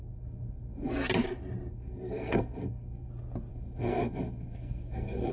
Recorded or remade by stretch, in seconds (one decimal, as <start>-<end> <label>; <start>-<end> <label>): 0.0-0.9 remade; 0.9-1.7 recorded; 1.7-3.1 remade; 3.1-3.5 recorded; 3.5-5.3 remade